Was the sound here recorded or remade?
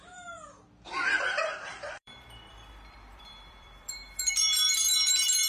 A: remade